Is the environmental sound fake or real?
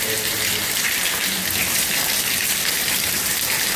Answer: real